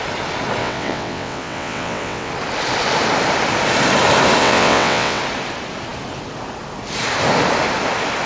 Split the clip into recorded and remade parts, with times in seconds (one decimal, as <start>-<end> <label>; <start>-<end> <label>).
0.0-0.6 recorded; 0.6-2.3 remade; 2.3-4.4 recorded; 4.4-5.2 remade; 5.2-8.3 recorded